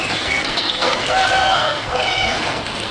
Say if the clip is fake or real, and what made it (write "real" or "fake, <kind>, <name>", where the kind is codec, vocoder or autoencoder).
fake, codec, SNAC